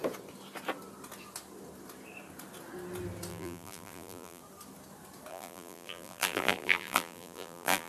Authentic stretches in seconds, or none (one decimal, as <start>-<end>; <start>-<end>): 0.0-3.3; 4.4-5.3